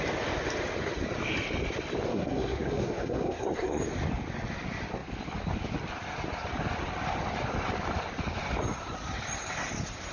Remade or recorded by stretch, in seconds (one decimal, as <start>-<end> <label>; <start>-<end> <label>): 0.0-2.1 recorded; 2.1-3.8 remade; 3.8-10.1 recorded